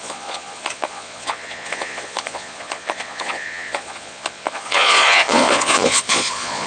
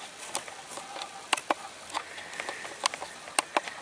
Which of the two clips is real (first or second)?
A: second